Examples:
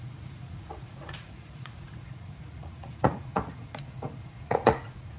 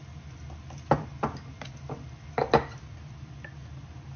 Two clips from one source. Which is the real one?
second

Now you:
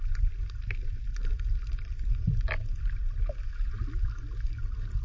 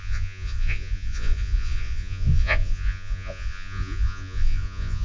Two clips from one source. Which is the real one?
first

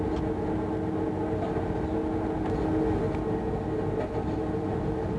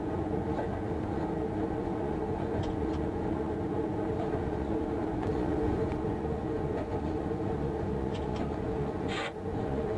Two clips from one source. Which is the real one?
first